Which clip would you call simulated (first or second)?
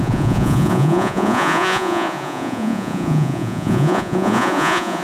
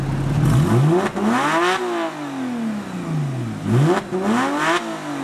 first